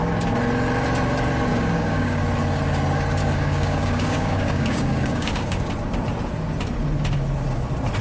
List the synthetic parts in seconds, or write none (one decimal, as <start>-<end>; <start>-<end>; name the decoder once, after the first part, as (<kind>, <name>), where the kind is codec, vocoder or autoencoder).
1.5-2.2 (codec, DAC); 3.2-5.7